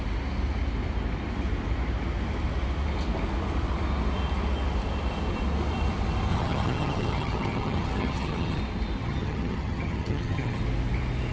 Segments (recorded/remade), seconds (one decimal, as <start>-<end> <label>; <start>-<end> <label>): 0.0-6.3 recorded; 6.3-8.6 remade; 8.6-9.0 recorded; 9.0-10.6 remade; 10.6-11.3 recorded